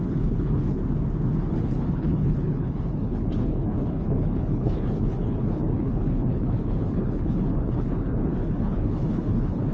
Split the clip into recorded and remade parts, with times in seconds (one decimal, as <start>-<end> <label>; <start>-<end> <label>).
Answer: 0.0-0.8 remade; 0.8-1.5 recorded; 1.5-9.7 remade